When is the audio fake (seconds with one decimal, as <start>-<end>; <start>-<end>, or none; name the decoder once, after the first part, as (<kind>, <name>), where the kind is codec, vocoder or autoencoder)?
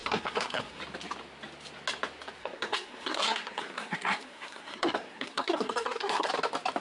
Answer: 0.0-0.8 (codec, SNAC); 2.4-6.3